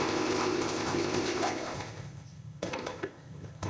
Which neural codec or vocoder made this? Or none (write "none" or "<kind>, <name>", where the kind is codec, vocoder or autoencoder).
codec, ZipCodec